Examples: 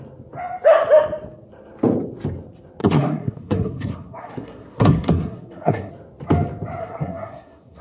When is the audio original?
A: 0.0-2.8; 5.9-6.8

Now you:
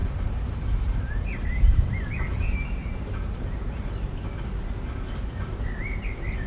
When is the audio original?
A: 0.0-0.9; 2.8-6.5

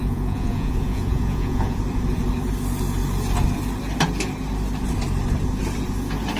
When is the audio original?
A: 1.8-6.4

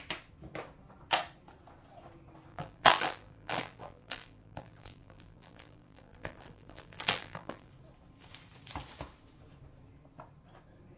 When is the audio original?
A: 0.0-2.5; 7.7-11.0

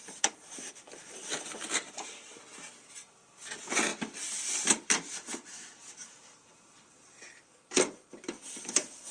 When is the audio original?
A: 2.4-3.9